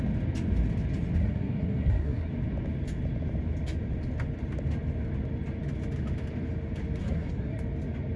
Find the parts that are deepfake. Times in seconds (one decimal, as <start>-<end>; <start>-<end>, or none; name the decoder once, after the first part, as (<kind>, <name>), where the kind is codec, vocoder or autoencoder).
1.2-2.3 (codec, SNAC); 7.0-7.6